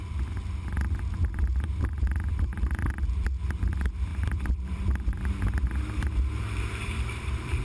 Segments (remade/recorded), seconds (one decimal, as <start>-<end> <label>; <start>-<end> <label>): 0.0-1.2 recorded; 1.2-2.9 remade; 2.9-4.1 recorded; 4.1-7.6 remade